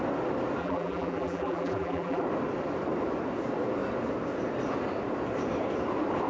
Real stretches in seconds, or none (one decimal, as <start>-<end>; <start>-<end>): 0.0-0.6; 2.2-6.3